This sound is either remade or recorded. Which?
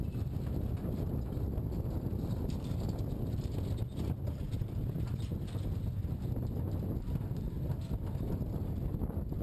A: recorded